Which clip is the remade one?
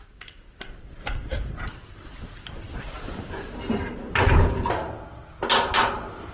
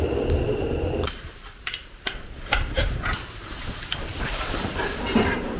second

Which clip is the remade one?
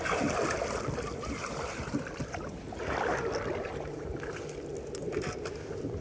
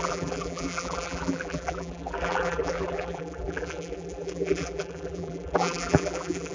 second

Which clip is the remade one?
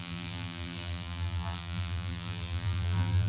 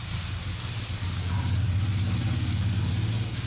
first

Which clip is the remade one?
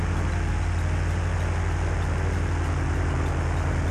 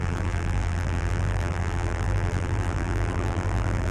second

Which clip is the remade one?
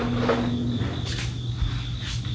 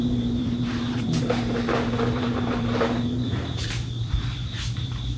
second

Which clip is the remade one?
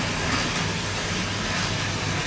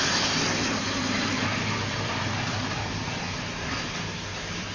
second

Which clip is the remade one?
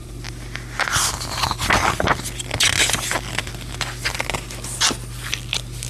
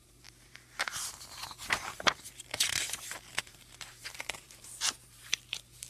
second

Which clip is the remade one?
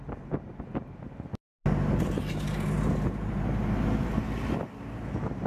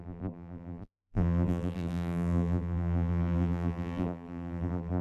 second